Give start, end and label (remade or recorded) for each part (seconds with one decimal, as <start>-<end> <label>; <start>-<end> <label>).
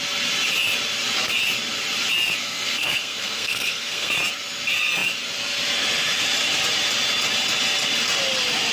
0.0-2.4 recorded; 2.4-4.1 remade; 4.1-8.7 recorded